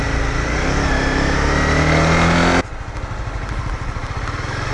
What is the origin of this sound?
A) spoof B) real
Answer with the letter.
B